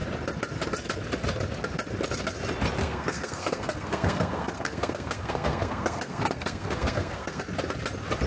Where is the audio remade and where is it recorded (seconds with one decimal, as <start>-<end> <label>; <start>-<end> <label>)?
0.0-2.8 recorded; 2.8-7.4 remade; 7.4-8.3 recorded